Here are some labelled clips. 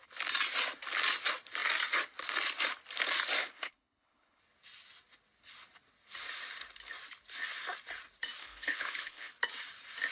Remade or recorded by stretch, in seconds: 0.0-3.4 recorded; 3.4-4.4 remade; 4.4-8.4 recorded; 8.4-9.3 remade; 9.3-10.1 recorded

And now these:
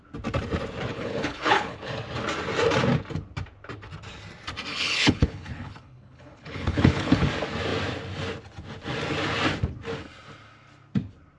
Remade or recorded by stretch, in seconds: 0.0-0.9 recorded; 0.9-1.9 remade; 1.9-4.7 recorded; 4.7-7.3 remade; 7.3-11.4 recorded

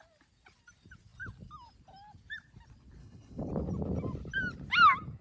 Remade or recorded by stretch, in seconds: 0.0-3.0 recorded; 3.0-3.5 remade; 3.5-5.2 recorded